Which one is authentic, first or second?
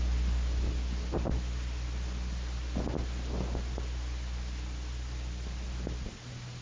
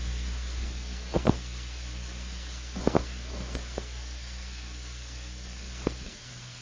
first